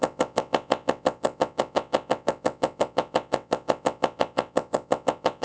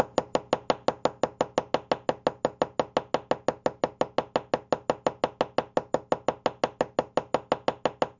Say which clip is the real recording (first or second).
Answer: second